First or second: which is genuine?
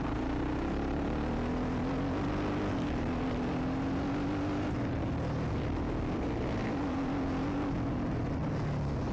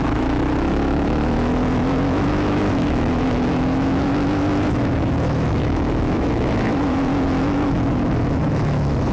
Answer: first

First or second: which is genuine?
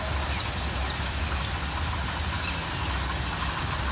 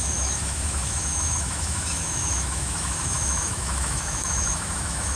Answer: first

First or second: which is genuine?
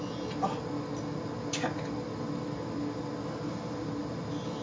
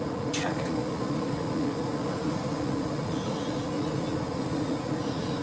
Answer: first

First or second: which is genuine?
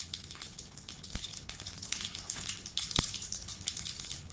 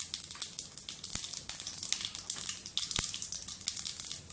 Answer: second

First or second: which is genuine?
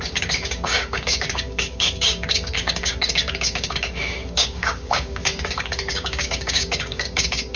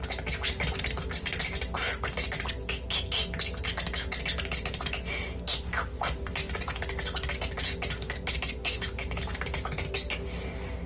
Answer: second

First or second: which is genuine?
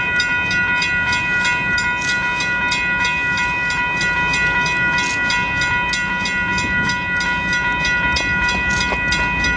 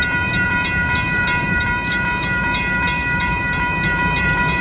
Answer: first